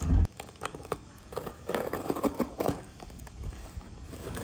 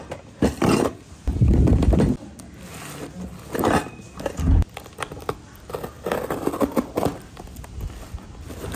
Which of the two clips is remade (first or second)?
first